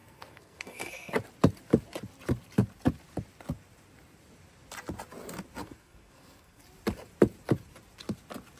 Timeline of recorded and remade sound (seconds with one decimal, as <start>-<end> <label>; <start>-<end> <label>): 0.0-1.1 remade; 1.1-5.6 recorded; 5.6-6.6 remade; 6.6-8.6 recorded